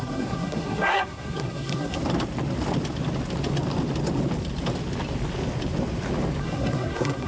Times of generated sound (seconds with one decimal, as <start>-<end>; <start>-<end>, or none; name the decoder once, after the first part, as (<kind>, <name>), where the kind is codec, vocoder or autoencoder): 0.0-2.0 (codec, SNAC); 6.4-7.3